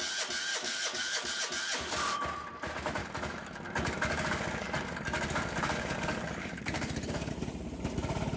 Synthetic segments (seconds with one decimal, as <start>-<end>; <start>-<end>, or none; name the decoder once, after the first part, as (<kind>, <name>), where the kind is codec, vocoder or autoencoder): 0.5-1.4 (codec, DAC); 3.0-7.3